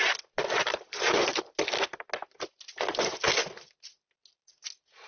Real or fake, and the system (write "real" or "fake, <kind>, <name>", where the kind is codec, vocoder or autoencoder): real